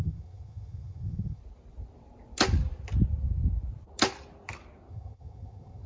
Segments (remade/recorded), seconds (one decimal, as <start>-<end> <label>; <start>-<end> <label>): 0.0-1.4 remade; 1.4-4.9 recorded; 4.9-5.9 remade